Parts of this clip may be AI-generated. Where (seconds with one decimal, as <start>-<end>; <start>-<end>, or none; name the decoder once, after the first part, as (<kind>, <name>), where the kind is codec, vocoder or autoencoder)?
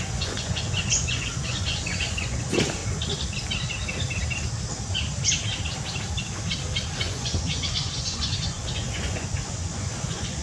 0.0-2.8 (vocoder, Vocos); 6.9-10.4